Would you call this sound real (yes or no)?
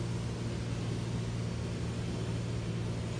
yes